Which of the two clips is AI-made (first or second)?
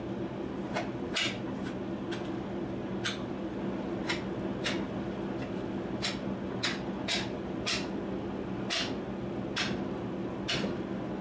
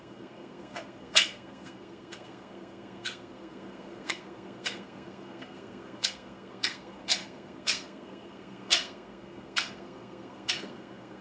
second